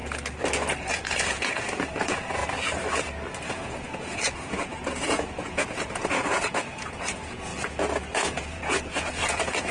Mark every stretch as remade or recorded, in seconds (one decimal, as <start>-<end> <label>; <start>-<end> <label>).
0.0-0.8 recorded; 0.8-2.4 remade; 2.4-3.5 recorded; 3.5-7.5 remade; 7.5-8.1 recorded; 8.1-9.7 remade